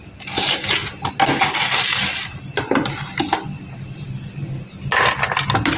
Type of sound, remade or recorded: recorded